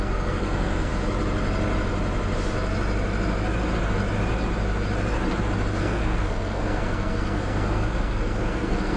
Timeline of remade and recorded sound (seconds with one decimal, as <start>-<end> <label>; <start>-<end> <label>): 0.0-0.9 remade; 0.9-5.8 recorded; 5.8-9.0 remade